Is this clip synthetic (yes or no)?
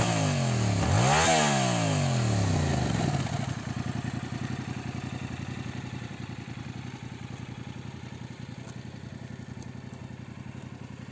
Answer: no